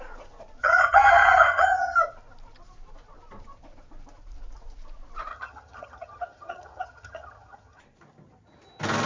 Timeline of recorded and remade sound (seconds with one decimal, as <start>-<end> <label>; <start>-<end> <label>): 0.0-0.6 recorded; 0.6-2.0 remade; 2.0-5.3 recorded; 5.3-7.8 remade; 7.8-9.1 recorded